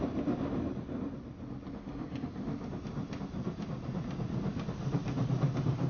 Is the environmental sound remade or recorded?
recorded